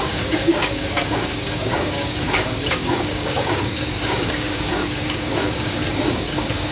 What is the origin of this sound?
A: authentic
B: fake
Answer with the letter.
B